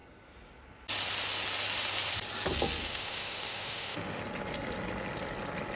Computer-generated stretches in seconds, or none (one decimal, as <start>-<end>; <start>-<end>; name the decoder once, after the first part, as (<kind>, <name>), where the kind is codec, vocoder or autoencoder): 2.8-4.2 (autoencoder, DAC-VAE)